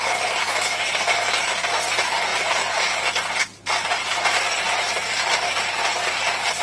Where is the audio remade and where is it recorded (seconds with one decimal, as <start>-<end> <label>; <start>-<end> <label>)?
0.0-2.3 recorded; 2.3-3.0 remade; 3.0-3.5 recorded; 3.5-6.6 remade